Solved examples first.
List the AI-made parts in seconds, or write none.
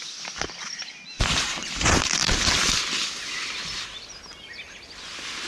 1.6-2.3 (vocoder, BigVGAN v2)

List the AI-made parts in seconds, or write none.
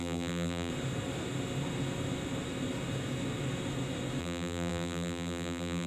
0.0-0.7 (vocoder, BigVGAN v2); 4.2-5.9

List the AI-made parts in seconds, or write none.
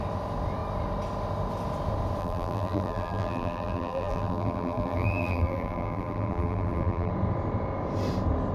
2.2-7.1 (vocoder, BigVGAN v2)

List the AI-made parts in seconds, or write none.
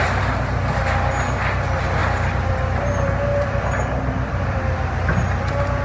2.0-2.5 (vocoder, BigVGAN v2); 3.3-4.6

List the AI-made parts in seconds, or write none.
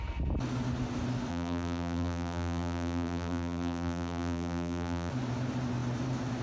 1.3-5.1 (vocoder, BigVGAN v2)